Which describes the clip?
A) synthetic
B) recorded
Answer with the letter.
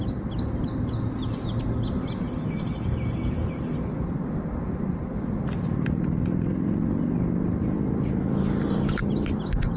B